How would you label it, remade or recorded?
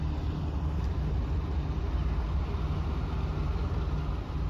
recorded